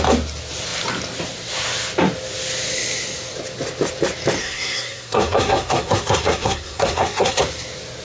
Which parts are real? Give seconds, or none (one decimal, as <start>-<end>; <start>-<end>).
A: 0.0-4.4; 7.4-8.0